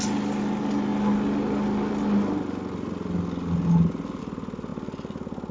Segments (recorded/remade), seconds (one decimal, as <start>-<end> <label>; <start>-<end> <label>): 0.0-5.5 recorded

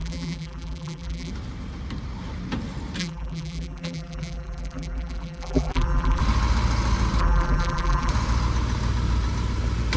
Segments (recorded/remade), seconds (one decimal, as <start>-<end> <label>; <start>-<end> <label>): 0.0-1.3 remade; 1.3-3.0 recorded; 3.0-6.2 remade; 6.2-7.2 recorded; 7.2-8.1 remade; 8.1-10.0 recorded

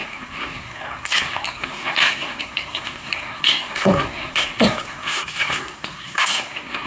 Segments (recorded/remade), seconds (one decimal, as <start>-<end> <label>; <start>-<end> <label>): 0.0-6.9 remade

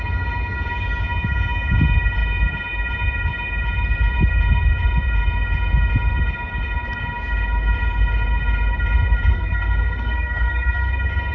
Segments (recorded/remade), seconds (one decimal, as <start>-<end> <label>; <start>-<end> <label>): 0.0-9.3 recorded; 9.3-10.9 remade; 10.9-11.3 recorded